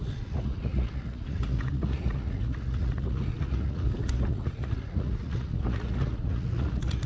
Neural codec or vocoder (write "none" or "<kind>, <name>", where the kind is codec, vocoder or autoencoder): vocoder, Vocos